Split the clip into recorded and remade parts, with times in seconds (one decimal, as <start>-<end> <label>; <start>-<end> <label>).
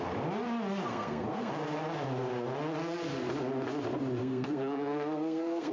0.0-0.9 recorded; 0.9-1.5 remade; 1.5-4.2 recorded; 4.2-5.7 remade